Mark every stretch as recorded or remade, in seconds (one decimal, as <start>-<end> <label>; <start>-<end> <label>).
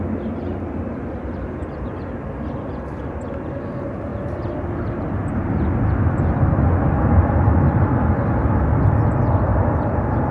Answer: 0.0-10.3 recorded